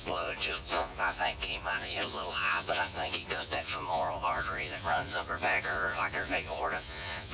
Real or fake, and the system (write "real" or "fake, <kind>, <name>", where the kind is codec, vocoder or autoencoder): fake, vocoder, Vocos